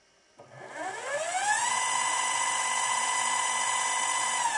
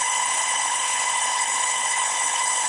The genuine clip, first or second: first